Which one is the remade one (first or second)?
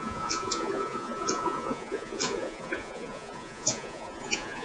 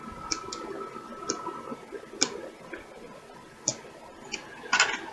first